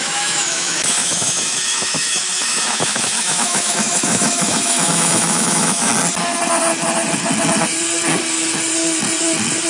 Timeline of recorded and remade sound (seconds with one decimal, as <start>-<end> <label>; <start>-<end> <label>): 0.0-5.9 remade; 5.9-9.7 recorded